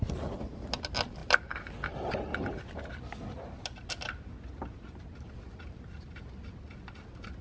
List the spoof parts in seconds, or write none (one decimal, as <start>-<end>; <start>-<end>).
none